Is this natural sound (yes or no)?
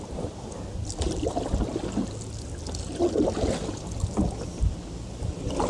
yes